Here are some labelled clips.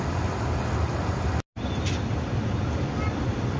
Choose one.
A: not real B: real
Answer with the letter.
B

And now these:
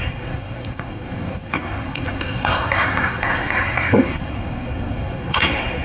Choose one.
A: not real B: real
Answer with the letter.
A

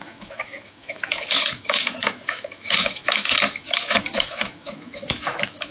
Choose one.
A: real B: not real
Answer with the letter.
B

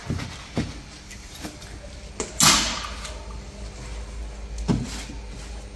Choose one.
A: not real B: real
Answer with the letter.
B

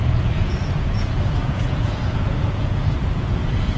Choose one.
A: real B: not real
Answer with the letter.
B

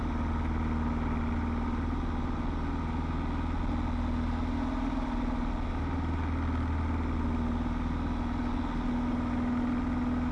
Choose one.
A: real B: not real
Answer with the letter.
A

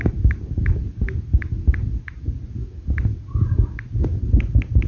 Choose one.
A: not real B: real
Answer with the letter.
B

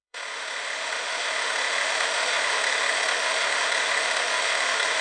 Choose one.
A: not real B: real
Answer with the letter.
A